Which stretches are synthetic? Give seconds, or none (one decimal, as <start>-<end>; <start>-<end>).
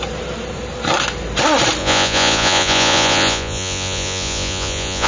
1.8-5.1